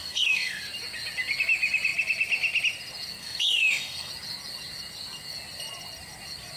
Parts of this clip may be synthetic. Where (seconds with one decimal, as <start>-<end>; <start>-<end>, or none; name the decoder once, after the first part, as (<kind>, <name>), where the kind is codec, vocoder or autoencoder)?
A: 0.0-0.6 (codec, SNAC); 3.2-4.1